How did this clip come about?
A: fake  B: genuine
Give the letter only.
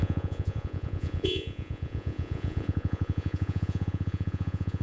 A